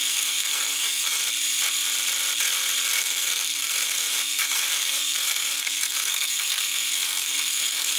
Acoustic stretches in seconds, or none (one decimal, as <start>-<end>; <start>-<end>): 1.2-3.0